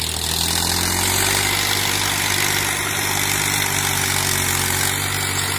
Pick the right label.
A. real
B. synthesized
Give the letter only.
A